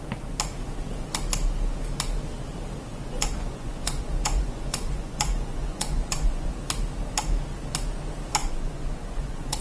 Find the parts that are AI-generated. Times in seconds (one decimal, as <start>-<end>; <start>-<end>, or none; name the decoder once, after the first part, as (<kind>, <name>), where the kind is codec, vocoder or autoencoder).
2.9-6.5 (vocoder, Vocos); 8.4-9.6